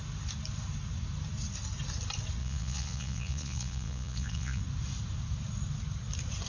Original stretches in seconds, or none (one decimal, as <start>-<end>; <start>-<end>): 0.0-2.4; 4.6-6.5